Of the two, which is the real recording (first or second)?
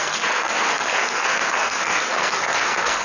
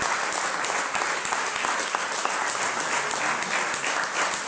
second